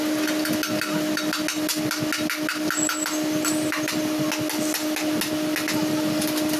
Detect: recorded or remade recorded